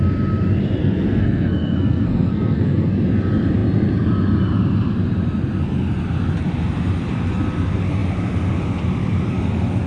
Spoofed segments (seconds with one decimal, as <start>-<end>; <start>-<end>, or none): 0.8-2.9